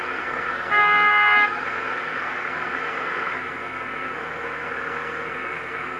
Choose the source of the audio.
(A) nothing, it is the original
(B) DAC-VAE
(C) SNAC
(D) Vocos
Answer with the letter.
C